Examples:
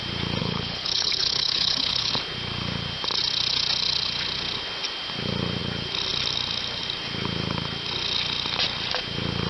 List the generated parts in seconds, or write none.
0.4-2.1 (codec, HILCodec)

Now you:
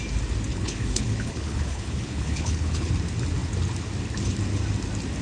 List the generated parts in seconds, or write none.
0.5-2.9 (codec, HILCodec)

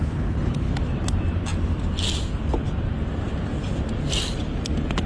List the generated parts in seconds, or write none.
0.0-0.7 (codec, HILCodec)